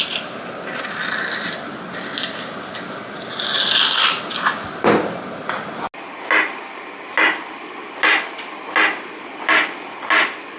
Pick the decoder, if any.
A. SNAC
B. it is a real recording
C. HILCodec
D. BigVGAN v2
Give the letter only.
B